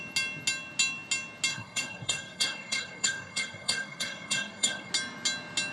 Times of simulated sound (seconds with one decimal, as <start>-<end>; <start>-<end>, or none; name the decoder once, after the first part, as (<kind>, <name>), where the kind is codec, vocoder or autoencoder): 1.5-4.9 (codec, SNAC)